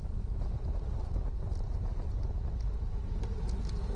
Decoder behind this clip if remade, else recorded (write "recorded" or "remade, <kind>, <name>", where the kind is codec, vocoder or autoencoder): recorded